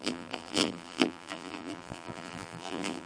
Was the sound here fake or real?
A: fake